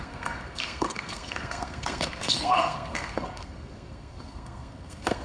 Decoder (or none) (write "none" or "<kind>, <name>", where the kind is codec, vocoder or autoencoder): codec, SNAC